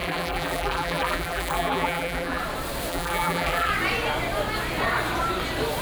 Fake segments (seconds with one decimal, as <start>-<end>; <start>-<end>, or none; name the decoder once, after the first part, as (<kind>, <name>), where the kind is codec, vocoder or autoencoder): 0.0-2.4 (vocoder, BigVGAN v2); 2.9-3.7